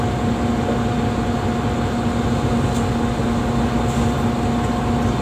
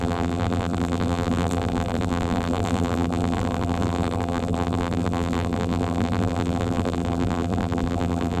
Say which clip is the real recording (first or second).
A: first